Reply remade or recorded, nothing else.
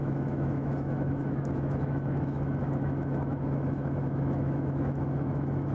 remade